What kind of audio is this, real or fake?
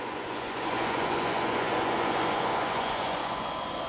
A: fake